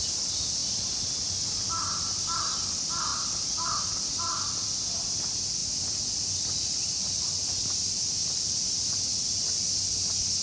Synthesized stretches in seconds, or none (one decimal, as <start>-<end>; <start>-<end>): none